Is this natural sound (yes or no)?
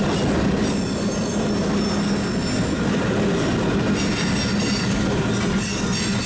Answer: yes